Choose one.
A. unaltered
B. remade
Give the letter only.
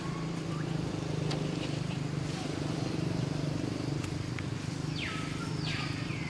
B